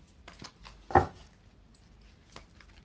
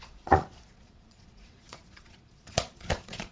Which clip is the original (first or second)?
first